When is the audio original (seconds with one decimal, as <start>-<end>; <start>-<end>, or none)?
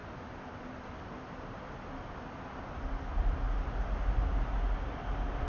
0.0-5.5